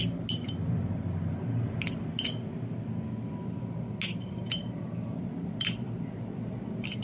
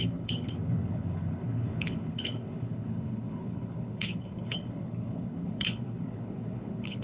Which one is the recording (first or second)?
first